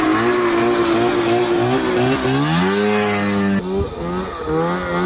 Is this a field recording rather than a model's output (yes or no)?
yes